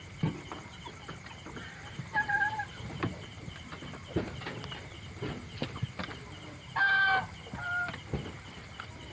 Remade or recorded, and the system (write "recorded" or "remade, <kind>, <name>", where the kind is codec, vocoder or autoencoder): remade, vocoder, BigVGAN v2